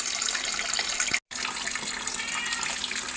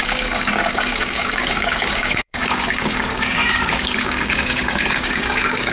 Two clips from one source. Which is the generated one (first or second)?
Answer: second